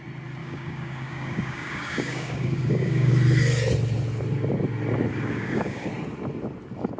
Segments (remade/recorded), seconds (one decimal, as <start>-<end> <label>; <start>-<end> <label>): 0.0-0.4 recorded; 0.4-3.1 remade; 3.1-5.1 recorded; 5.1-5.9 remade; 5.9-7.0 recorded